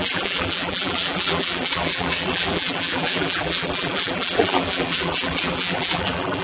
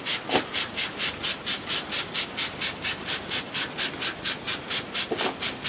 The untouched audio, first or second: second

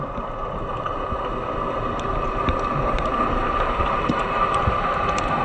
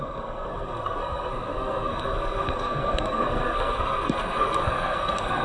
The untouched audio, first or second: first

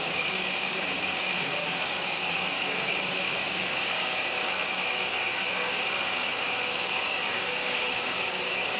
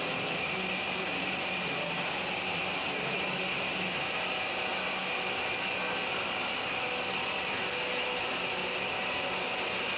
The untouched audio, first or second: second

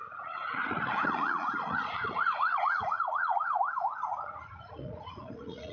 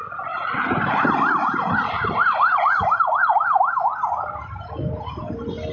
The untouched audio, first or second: second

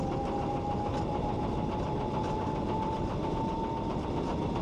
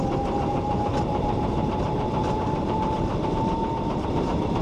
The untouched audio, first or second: first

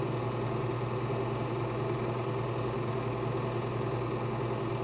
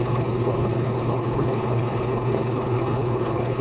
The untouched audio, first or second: first